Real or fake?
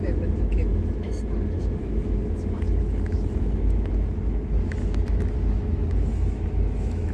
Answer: fake